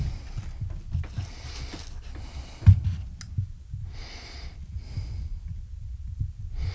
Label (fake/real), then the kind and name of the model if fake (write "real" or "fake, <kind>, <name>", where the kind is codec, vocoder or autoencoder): real